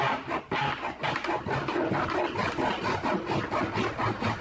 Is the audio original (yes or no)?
yes